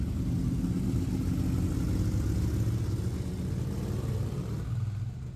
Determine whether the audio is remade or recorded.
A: recorded